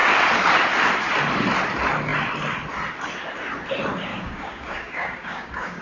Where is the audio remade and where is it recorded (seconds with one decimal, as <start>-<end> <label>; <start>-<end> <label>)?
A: 0.0-4.1 recorded; 4.1-5.8 remade